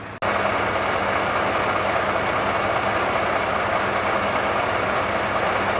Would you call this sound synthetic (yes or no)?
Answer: no